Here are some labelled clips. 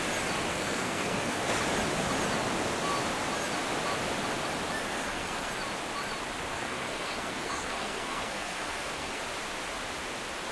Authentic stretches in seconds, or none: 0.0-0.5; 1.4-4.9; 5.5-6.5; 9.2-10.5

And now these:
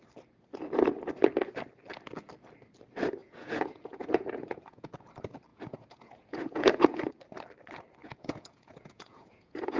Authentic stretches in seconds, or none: 0.0-3.2; 4.9-5.5; 7.1-8.0

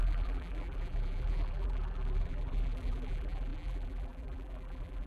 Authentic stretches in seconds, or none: none